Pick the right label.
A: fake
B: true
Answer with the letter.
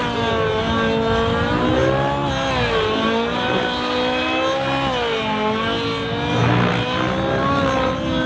B